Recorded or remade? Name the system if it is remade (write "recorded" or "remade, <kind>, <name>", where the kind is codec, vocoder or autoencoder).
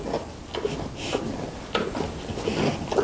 recorded